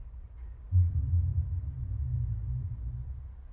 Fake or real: real